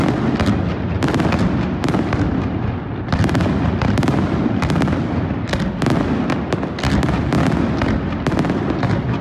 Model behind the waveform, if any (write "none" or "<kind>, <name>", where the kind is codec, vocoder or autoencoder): none